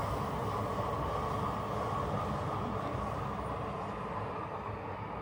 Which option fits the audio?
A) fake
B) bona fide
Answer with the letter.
B